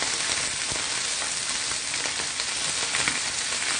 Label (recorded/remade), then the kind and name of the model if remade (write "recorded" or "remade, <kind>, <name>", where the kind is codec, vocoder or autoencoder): recorded